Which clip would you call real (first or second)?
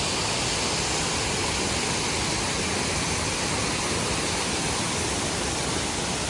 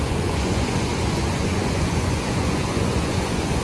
first